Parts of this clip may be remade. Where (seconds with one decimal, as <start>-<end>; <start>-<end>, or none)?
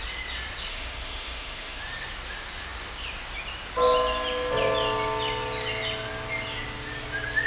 0.7-1.8